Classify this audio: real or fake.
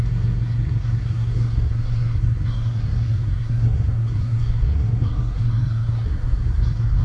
fake